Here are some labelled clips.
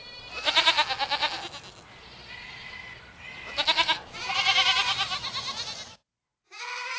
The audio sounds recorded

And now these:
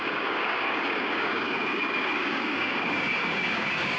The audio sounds remade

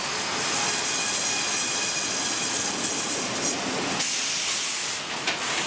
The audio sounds recorded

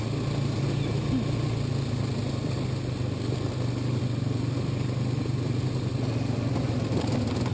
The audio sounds recorded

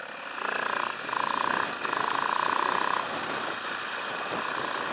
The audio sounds recorded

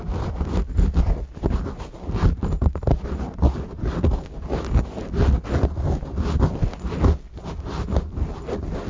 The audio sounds recorded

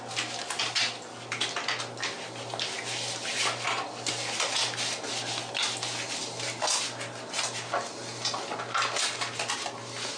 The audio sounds recorded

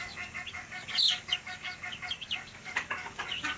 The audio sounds remade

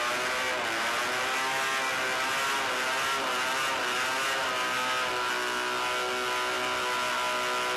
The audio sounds recorded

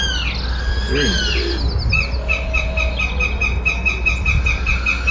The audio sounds recorded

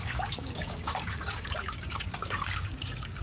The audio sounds remade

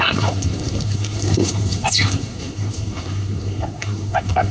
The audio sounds remade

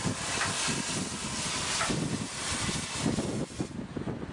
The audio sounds recorded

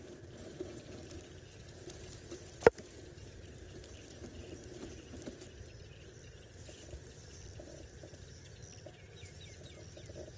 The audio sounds recorded